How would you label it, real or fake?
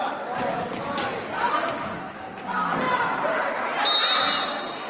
real